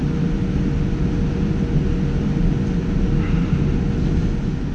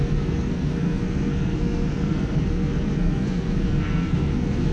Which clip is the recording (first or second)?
first